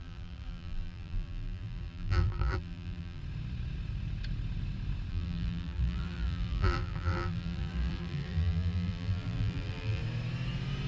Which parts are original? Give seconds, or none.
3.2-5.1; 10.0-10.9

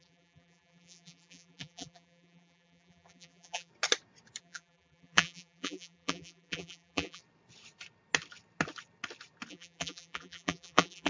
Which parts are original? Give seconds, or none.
3.7-4.4; 7.2-9.5

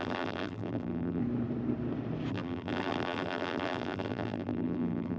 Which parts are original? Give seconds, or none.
1.2-2.3